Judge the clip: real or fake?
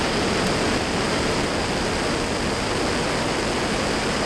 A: real